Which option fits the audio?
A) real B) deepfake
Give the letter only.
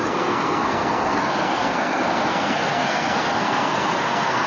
B